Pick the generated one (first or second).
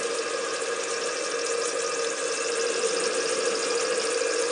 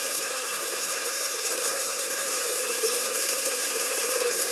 second